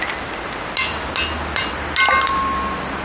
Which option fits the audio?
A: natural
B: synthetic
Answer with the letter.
A